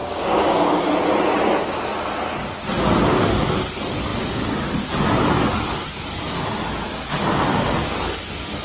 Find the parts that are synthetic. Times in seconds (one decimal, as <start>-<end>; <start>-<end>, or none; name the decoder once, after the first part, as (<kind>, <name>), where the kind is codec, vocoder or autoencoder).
0.0-0.9 (codec, DAC)